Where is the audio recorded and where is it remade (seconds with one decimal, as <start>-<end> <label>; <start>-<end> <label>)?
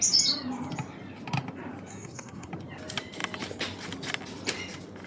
0.0-1.9 recorded; 1.9-2.5 remade; 2.5-5.1 recorded